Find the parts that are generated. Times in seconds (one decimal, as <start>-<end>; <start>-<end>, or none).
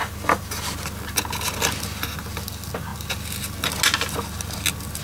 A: none